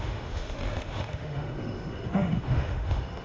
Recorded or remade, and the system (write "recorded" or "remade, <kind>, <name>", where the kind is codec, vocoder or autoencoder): remade, autoencoder, DAC-VAE